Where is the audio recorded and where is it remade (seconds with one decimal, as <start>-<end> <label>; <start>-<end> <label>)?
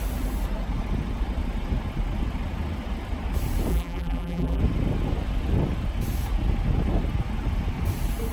0.0-3.7 recorded; 3.7-4.6 remade; 4.6-8.3 recorded